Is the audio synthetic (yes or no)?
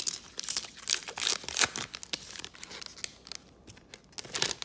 no